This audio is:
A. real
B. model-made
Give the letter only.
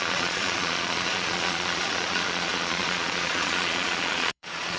B